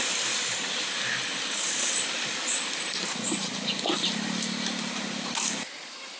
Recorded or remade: recorded